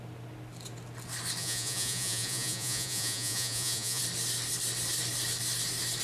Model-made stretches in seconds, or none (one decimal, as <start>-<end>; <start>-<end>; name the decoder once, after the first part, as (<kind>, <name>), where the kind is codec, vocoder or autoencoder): 1.4-4.0 (vocoder, Vocos)